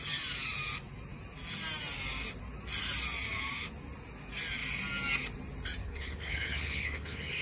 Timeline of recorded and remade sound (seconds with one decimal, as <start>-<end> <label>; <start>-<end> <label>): 0.0-5.8 recorded; 5.8-7.4 remade